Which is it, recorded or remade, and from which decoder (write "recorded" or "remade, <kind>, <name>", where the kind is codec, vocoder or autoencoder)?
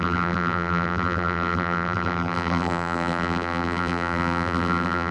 remade, vocoder, BigVGAN v2